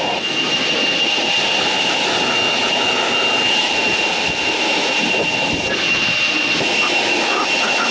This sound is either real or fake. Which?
real